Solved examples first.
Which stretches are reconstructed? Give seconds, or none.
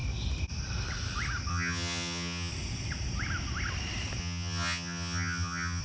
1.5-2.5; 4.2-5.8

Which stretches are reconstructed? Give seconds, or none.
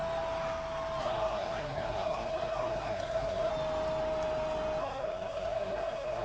1.0-3.5; 4.8-6.2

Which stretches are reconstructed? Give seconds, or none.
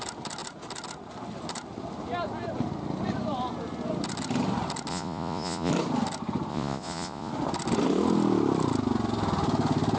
4.9-5.7; 6.5-7.3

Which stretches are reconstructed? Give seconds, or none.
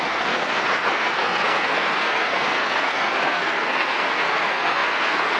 0.0-5.4